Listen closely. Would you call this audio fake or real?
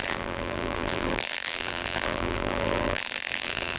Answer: fake